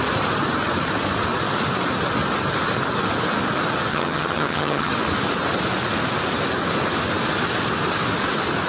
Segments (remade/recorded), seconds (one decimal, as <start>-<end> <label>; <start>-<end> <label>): 0.0-3.9 recorded; 3.9-4.9 remade; 4.9-8.7 recorded